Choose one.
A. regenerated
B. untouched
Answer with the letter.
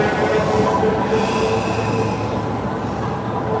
B